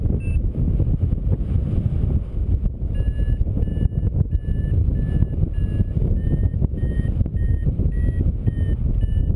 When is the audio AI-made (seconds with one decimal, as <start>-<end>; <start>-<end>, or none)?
none